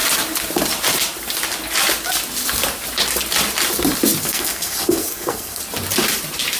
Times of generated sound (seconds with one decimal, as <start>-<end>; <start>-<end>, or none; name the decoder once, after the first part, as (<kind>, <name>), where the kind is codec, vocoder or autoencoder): 4.2-5.6 (codec, SNAC)